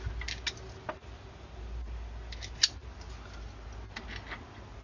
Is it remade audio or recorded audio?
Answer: recorded